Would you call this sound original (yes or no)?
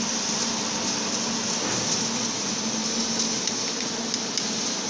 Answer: yes